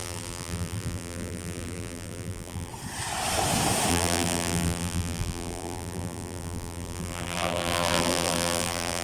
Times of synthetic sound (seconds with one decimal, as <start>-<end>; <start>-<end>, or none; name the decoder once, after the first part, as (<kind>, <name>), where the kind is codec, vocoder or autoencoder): 0.0-2.7 (vocoder, BigVGAN v2); 3.9-9.0

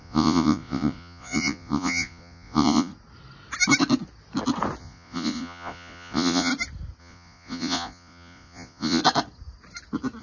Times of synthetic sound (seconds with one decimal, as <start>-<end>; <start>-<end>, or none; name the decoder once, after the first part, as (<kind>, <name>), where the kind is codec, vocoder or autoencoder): 0.0-2.9 (vocoder, Vocos); 4.8-6.5; 7.0-9.0

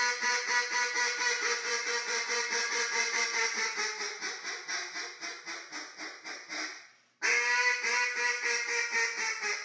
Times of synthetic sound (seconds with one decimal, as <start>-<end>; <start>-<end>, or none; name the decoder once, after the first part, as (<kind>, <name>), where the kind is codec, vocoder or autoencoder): 1.6-3.2 (vocoder, Vocos)

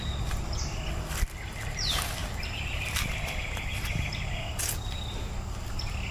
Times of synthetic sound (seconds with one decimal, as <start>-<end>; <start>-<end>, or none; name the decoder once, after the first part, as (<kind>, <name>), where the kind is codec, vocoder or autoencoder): none

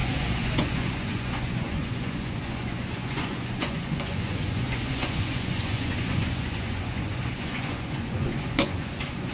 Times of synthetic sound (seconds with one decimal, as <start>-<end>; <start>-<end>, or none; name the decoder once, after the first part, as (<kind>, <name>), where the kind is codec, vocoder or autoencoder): 0.0-9.3 (vocoder, Vocos)

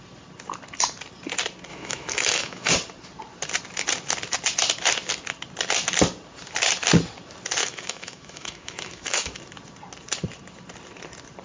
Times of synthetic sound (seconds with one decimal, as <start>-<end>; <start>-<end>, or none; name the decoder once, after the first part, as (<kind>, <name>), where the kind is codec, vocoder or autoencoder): 1.7-2.7 (autoencoder, DAC-VAE); 7.6-9.4

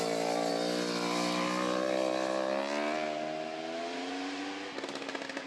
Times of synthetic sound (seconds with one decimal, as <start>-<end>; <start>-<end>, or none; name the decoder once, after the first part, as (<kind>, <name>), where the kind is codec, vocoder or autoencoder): none